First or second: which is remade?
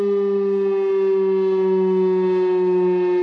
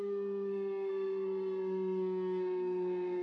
second